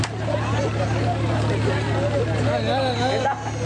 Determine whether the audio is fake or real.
real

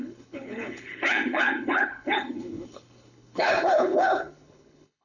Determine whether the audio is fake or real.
fake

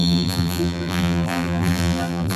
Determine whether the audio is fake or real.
fake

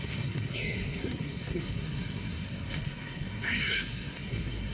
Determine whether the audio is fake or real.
fake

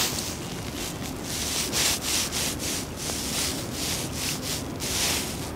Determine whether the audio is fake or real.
real